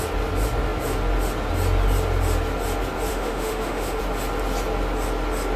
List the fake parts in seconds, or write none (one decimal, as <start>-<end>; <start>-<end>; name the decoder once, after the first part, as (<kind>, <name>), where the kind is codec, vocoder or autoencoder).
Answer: 3.1-4.0 (autoencoder, DAC-VAE)

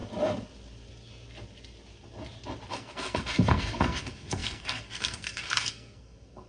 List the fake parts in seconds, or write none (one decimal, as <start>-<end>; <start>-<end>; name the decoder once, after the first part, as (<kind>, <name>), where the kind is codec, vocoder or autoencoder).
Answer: 2.7-6.5 (codec, SNAC)

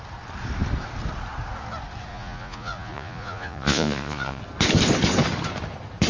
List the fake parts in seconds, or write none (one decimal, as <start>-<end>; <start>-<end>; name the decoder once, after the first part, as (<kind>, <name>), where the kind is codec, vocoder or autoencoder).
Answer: 2.1-4.4 (vocoder, Vocos)

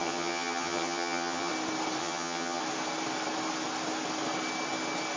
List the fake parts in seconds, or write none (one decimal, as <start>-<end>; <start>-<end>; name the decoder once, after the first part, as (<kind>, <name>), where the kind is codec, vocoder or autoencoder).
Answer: 0.0-1.5 (vocoder, HiFi-GAN); 2.0-2.6

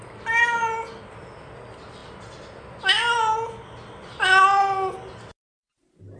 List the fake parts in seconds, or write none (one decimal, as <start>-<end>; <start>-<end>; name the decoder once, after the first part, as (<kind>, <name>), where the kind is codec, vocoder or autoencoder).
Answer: none

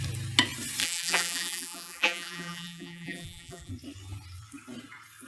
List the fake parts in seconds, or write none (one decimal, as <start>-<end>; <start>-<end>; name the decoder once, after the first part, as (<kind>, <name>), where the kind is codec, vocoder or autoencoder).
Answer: 0.8-3.7 (vocoder, BigVGAN v2)